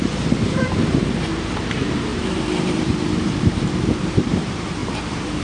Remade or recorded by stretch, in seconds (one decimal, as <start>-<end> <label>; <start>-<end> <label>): 0.0-5.4 remade